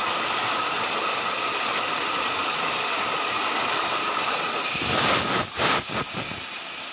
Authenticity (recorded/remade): recorded